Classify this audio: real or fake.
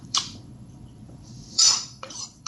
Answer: fake